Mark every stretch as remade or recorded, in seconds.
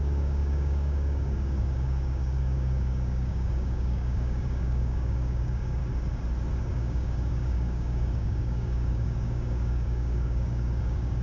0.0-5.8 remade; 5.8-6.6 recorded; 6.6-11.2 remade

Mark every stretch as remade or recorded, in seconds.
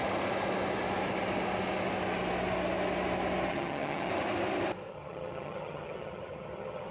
0.0-3.5 recorded; 3.5-4.1 remade; 4.1-4.9 recorded; 4.9-6.9 remade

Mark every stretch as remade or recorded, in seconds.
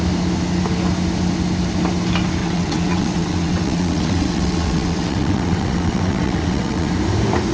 0.0-2.4 recorded; 2.4-6.9 remade; 6.9-7.5 recorded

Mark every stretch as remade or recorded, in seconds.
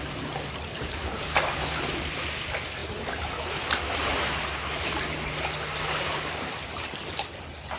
0.0-7.8 recorded